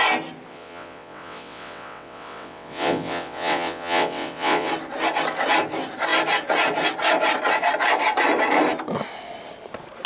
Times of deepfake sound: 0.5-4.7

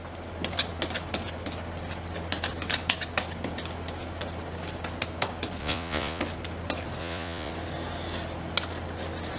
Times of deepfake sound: 5.6-6.2; 7.0-7.5